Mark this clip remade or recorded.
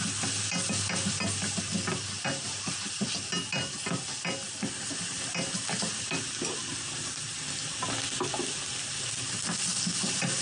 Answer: recorded